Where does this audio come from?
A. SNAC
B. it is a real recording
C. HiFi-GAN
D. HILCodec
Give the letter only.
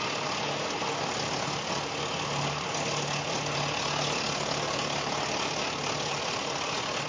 B